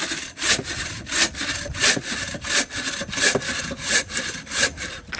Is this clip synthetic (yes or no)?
no